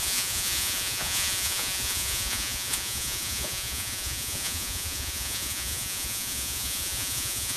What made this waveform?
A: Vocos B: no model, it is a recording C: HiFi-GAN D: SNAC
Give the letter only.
A